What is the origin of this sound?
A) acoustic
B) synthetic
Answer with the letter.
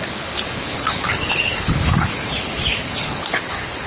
B